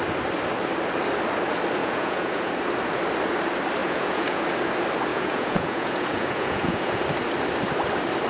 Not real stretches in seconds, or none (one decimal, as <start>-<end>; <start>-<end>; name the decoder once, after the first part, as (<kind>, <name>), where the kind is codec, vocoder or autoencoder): 1.8-2.5 (vocoder, Vocos); 3.8-4.4; 5.1-7.0